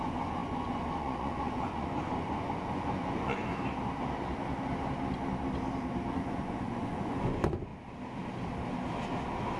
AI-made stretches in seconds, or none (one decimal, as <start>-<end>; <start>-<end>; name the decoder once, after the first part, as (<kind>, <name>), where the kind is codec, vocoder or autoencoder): 0.0-3.5 (vocoder, Vocos); 6.1-7.7